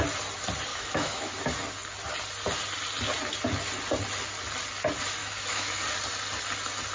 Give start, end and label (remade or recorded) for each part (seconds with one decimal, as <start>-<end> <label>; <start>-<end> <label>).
0.0-0.7 recorded; 0.7-1.3 remade; 1.3-5.2 recorded; 5.2-5.8 remade; 5.8-6.9 recorded